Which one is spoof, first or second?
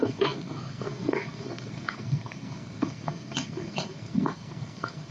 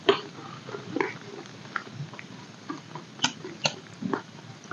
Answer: first